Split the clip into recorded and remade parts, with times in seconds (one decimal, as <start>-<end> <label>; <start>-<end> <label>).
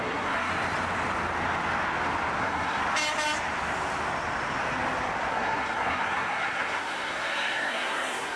0.0-0.5 remade; 0.5-2.4 recorded; 2.4-2.8 remade; 2.8-5.3 recorded; 5.3-8.4 remade